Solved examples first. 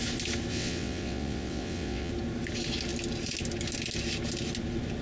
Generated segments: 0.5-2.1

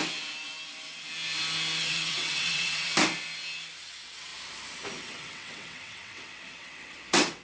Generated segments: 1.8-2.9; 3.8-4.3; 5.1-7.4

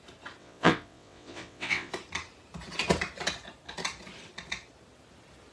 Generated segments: 0.4-1.9

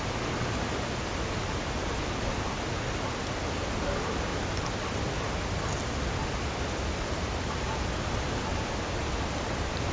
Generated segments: none

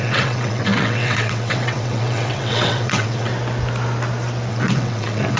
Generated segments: 0.0-3.3; 4.5-5.4

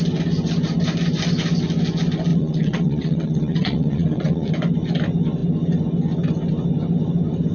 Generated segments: 2.3-4.5